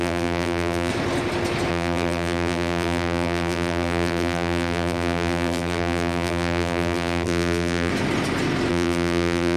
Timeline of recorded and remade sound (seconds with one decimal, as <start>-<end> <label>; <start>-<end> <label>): 0.0-0.9 remade; 0.9-1.7 recorded; 1.7-7.9 remade; 7.9-8.7 recorded; 8.7-9.6 remade